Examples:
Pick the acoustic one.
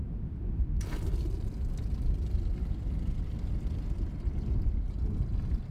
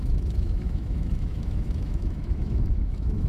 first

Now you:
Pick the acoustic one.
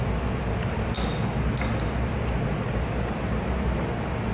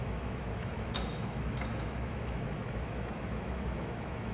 first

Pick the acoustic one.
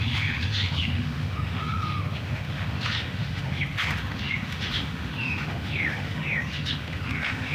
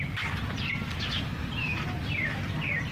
second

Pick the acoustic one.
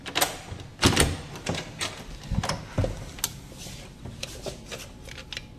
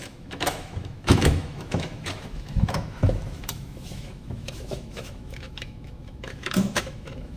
first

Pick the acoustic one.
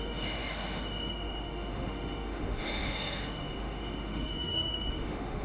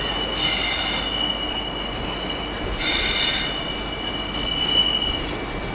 second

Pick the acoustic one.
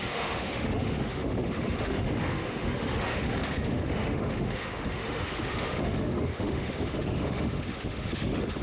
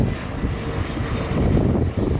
second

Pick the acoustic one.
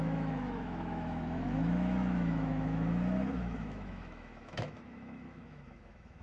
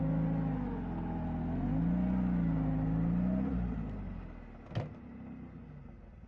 second